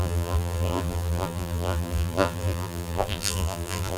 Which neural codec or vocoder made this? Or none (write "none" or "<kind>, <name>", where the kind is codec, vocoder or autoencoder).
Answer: vocoder, BigVGAN v2